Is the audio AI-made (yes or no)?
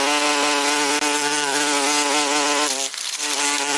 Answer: no